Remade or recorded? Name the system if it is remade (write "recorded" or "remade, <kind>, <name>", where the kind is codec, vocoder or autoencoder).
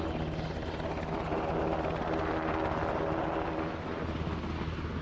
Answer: recorded